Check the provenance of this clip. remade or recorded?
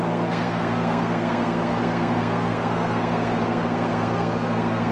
remade